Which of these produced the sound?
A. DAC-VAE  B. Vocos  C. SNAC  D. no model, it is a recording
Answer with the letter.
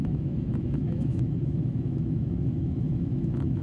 A